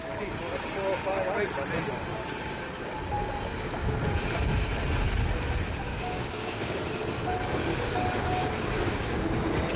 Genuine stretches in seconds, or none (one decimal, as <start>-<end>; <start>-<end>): 0.0-2.1; 2.8-5.9; 6.8-7.7; 9.2-9.8

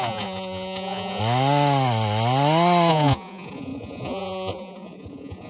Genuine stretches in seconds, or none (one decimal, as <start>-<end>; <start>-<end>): 1.2-2.9

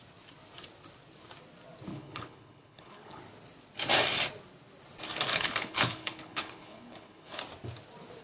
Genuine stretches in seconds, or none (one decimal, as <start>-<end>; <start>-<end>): 0.0-1.9; 3.2-5.3; 7.4-8.2